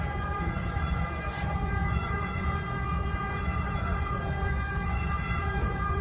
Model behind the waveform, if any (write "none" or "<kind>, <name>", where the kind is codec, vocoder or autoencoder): vocoder, Vocos